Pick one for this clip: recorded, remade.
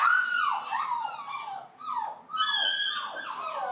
recorded